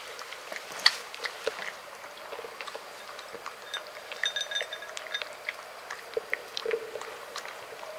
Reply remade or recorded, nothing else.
remade